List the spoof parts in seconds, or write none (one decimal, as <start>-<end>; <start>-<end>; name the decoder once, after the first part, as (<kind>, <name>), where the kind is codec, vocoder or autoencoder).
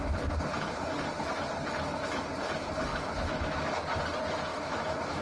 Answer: 2.9-3.7 (autoencoder, DAC-VAE); 4.5-5.2